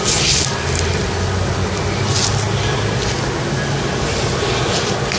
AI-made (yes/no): no